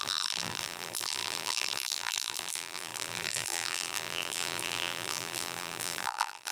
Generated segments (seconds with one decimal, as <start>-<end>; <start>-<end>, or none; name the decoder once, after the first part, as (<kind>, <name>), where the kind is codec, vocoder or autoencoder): 0.0-6.5 (vocoder, BigVGAN v2)